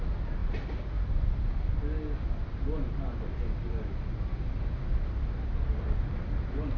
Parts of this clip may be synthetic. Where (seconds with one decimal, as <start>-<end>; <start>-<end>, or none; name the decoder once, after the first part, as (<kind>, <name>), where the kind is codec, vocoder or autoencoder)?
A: none